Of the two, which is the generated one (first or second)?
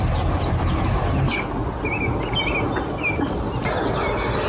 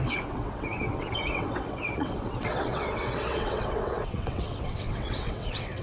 second